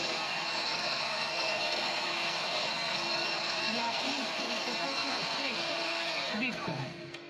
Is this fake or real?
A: fake